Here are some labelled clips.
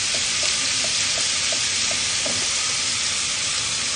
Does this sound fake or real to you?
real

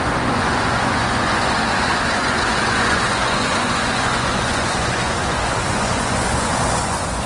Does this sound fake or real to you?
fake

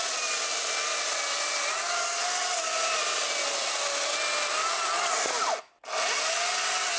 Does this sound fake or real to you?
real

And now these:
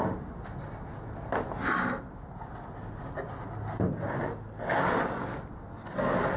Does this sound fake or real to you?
real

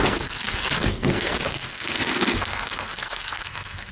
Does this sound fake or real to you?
fake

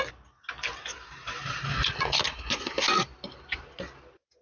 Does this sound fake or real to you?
real